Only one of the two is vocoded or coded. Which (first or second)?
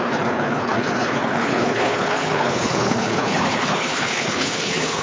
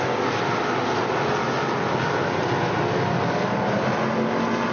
first